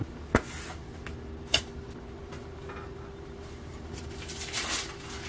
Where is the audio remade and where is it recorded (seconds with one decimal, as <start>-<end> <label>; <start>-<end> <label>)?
0.0-5.3 recorded